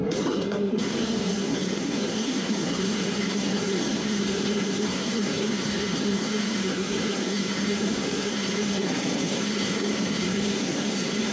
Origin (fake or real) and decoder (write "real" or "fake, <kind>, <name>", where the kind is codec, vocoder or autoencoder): fake, codec, SNAC